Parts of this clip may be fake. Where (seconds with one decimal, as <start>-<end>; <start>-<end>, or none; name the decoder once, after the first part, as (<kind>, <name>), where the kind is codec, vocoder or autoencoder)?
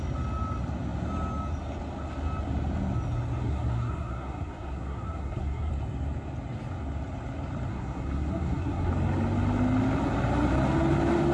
3.4-5.7 (codec, SNAC); 7.7-8.9